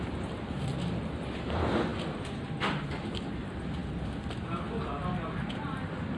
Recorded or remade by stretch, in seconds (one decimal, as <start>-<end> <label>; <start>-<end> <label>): 0.0-6.2 recorded